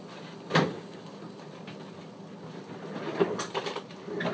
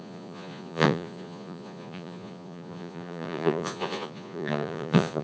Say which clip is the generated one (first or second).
second